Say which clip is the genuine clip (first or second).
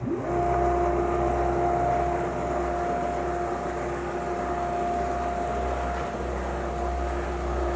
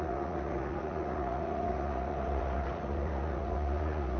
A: first